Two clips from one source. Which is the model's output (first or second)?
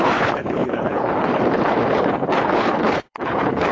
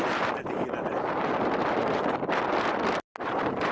first